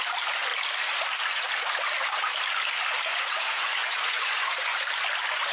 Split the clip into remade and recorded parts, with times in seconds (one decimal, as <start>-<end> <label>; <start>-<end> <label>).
0.0-3.1 recorded; 3.1-4.8 remade; 4.8-5.5 recorded